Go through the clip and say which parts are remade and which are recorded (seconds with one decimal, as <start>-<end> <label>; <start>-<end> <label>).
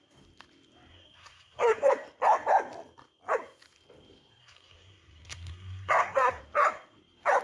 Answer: 0.0-0.9 recorded; 0.9-1.9 remade; 1.9-4.4 recorded; 4.4-6.4 remade; 6.4-7.4 recorded